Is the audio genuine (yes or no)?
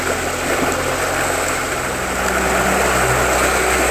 yes